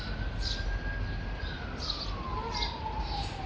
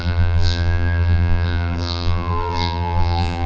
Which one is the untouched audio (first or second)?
first